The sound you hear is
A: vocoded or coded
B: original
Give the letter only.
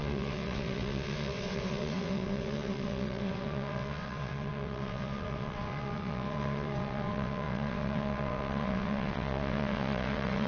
A